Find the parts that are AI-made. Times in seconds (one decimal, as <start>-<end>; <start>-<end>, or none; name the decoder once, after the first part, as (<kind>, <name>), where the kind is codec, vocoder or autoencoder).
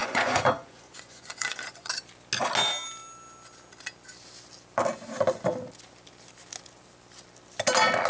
0.0-1.9 (vocoder, Vocos)